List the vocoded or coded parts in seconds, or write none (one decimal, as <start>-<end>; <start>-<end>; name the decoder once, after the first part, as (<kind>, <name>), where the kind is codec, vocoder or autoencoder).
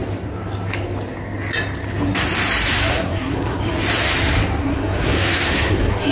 2.9-3.6 (codec, SNAC); 4.6-6.1